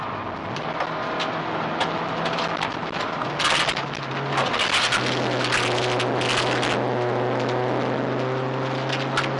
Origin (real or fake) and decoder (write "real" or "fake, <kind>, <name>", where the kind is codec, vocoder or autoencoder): real